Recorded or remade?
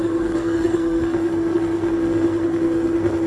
remade